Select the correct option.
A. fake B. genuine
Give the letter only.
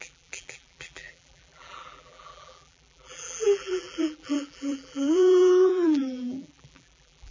A